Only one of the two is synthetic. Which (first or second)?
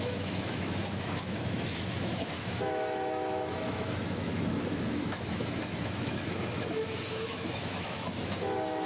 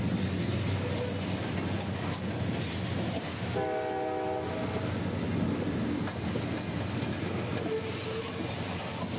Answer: first